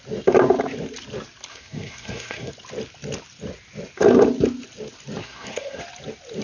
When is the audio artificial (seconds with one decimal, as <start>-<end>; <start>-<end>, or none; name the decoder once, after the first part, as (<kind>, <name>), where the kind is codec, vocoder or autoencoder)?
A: 1.5-2.5 (codec, SNAC); 5.2-5.8